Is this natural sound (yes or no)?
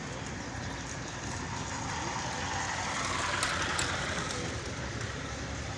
yes